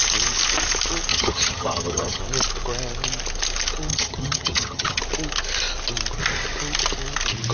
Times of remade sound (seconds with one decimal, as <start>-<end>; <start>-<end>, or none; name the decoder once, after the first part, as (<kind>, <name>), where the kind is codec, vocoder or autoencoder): 1.1-2.2 (vocoder, HiFi-GAN); 3.9-5.0